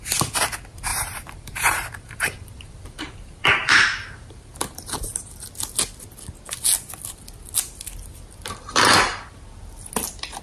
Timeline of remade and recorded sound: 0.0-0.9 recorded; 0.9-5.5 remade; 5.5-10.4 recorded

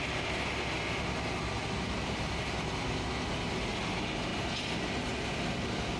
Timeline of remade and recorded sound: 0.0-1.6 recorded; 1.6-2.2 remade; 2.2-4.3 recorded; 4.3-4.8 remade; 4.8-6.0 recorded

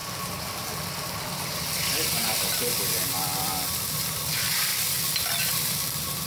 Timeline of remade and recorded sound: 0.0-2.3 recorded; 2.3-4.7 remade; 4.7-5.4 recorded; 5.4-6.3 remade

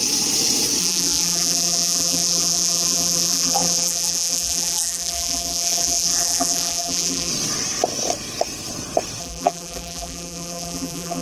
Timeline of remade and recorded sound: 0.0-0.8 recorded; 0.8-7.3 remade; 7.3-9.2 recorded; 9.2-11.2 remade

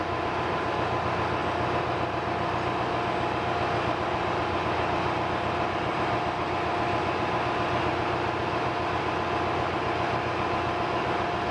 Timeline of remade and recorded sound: 0.0-11.5 recorded

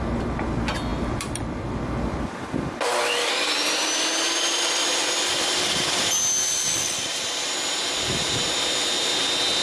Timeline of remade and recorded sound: 0.0-0.9 recorded; 0.9-3.3 remade; 3.3-9.6 recorded